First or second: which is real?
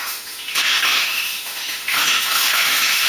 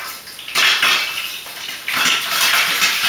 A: second